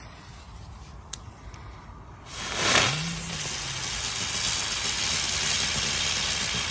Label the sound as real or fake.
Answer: real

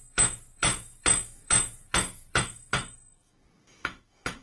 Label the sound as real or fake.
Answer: fake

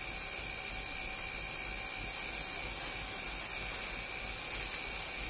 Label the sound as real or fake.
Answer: real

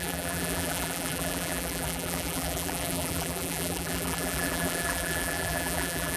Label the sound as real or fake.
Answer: fake